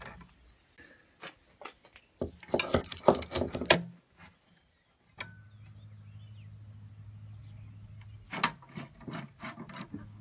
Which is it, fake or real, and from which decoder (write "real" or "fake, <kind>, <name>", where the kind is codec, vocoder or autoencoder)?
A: real